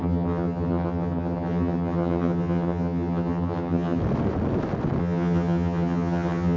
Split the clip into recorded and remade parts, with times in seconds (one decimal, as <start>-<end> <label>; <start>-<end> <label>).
0.0-4.0 remade; 4.0-5.0 recorded; 5.0-6.6 remade